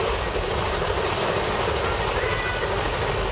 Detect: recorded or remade recorded